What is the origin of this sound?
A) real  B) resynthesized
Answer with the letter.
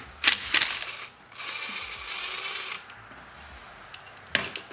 A